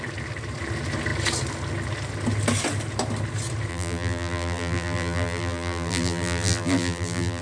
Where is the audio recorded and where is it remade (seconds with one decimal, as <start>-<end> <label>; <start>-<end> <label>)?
0.0-3.7 recorded; 3.7-7.4 remade